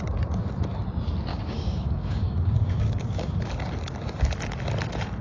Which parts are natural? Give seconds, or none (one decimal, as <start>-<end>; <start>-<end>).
0.0-1.3; 3.4-5.2